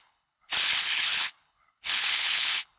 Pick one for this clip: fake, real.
fake